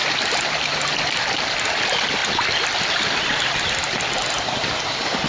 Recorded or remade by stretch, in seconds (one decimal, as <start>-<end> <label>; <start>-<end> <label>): 0.0-5.3 recorded